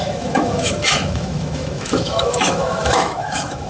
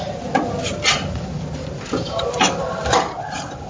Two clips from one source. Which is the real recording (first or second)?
second